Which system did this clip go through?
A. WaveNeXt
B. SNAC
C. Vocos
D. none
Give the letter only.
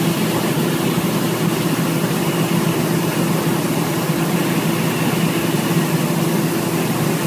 D